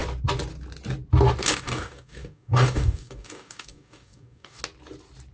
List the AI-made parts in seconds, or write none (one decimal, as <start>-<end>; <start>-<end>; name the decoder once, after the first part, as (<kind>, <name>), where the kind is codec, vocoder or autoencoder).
1.4-4.6 (codec, DAC)